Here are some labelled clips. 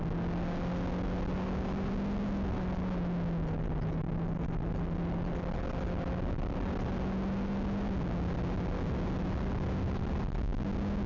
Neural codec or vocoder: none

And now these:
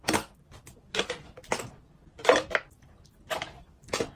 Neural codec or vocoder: none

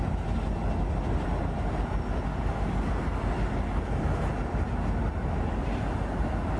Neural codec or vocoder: none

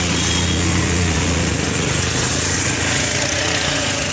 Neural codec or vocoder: vocoder, Vocos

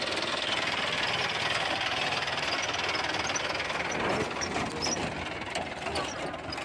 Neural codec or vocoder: none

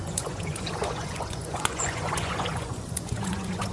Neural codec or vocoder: vocoder, Vocos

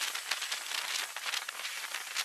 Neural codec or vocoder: none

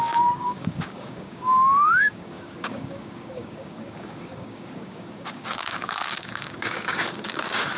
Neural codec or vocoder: codec, DAC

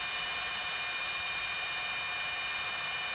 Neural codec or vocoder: none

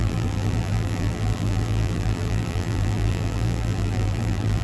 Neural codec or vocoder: vocoder, BigVGAN v2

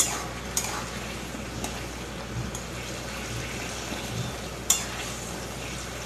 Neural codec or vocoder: none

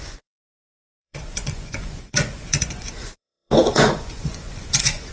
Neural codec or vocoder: vocoder, Vocos